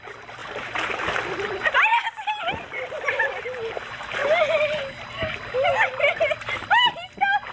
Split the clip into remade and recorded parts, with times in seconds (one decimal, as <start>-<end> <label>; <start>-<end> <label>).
0.0-0.4 recorded; 0.4-0.9 remade; 0.9-7.5 recorded